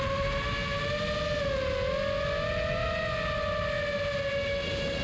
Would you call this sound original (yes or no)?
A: yes